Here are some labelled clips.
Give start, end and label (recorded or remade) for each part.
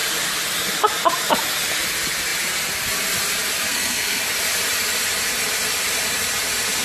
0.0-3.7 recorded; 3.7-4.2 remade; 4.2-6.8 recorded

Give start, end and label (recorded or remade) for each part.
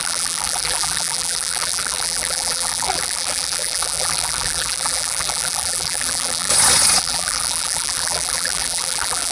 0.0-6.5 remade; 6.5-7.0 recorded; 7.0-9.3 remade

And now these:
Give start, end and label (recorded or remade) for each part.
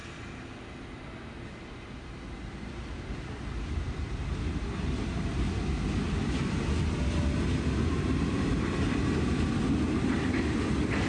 0.0-11.1 recorded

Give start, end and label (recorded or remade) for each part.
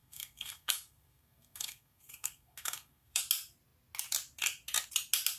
0.0-3.2 remade; 3.2-5.4 recorded